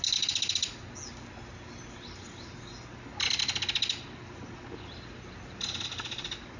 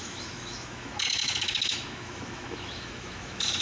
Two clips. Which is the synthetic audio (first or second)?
second